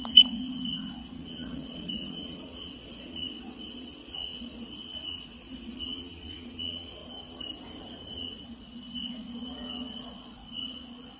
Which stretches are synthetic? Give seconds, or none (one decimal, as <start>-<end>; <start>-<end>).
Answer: 0.0-7.0; 7.8-11.2